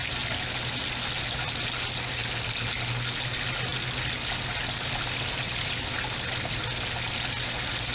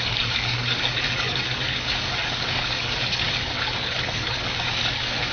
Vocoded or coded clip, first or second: second